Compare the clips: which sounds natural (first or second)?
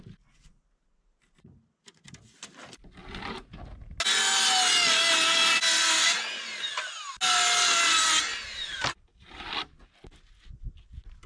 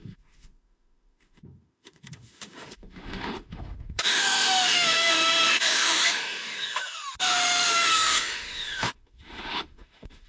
first